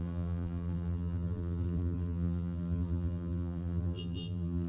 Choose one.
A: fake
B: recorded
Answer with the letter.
A